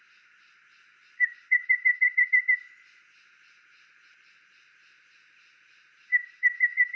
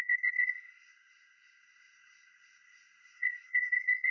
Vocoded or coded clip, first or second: second